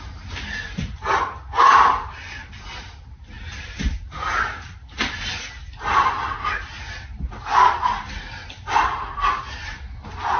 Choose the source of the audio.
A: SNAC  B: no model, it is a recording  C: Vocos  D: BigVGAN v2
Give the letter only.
B